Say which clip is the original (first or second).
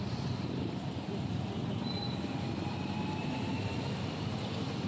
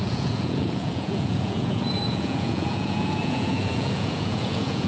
first